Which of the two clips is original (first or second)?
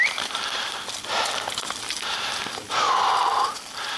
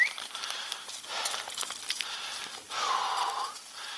second